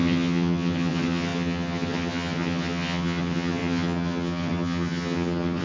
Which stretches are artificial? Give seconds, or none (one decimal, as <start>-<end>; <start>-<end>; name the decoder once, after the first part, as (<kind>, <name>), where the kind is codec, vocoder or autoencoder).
0.0-5.6 (vocoder, HiFi-GAN)